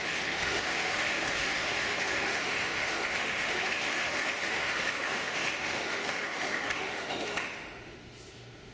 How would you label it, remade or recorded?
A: remade